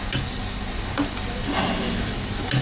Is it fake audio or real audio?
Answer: real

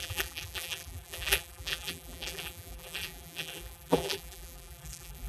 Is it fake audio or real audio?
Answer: fake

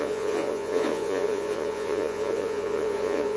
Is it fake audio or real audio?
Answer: fake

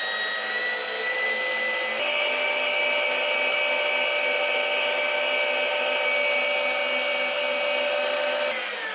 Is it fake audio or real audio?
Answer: real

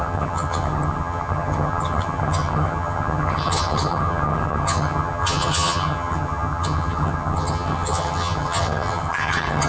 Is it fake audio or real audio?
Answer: fake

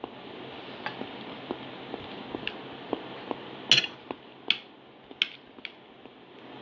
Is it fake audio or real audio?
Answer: real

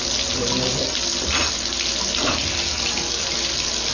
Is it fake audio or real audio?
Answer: real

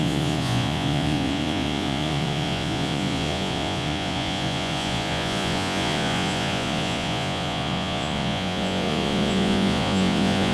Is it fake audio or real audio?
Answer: fake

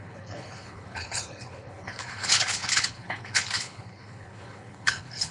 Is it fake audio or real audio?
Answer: fake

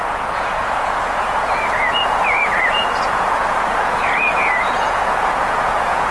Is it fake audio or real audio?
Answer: fake